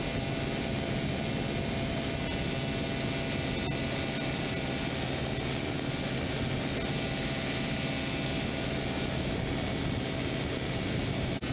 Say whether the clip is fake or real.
real